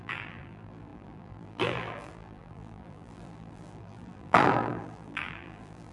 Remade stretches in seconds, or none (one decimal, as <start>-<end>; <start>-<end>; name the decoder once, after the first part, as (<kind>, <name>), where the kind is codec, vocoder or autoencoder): 0.0-5.9 (vocoder, BigVGAN v2)